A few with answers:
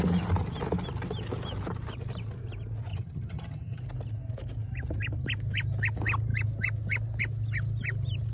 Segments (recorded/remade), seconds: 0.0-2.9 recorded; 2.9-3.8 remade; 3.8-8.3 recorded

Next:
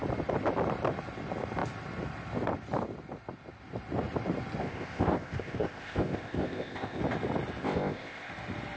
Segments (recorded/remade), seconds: 0.0-4.6 recorded; 4.6-7.0 remade; 7.0-7.6 recorded; 7.6-8.3 remade; 8.3-8.8 recorded

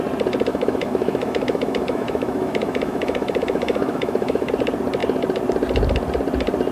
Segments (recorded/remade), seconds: 0.0-0.5 recorded; 0.5-4.5 remade; 4.5-6.7 recorded

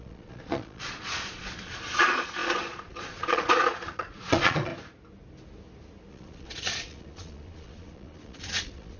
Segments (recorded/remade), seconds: 0.0-4.7 remade; 4.7-6.1 recorded; 6.1-9.0 remade

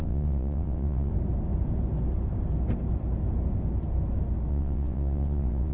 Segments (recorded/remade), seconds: 0.0-1.1 remade; 1.1-4.5 recorded; 4.5-5.7 remade

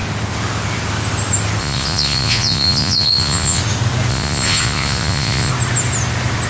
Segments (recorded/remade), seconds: 0.0-1.6 recorded; 1.6-3.6 remade; 3.6-4.1 recorded; 4.1-5.5 remade; 5.5-6.5 recorded

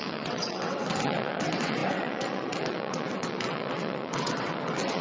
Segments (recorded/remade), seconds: 0.0-5.0 remade